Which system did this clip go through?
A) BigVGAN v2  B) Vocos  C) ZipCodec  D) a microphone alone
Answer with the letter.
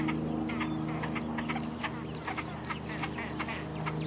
D